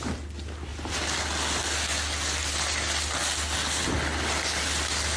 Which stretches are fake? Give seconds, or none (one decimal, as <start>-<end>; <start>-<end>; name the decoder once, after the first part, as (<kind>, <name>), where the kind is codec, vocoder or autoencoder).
none